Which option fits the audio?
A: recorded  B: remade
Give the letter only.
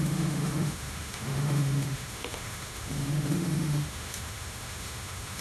B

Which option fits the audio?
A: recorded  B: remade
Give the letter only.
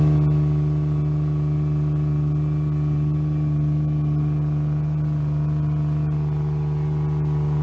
A